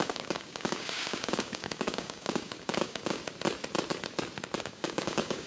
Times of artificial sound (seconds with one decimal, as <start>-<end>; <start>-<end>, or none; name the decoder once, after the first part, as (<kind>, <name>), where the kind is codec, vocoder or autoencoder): 0.0-3.2 (codec, DAC); 4.6-5.5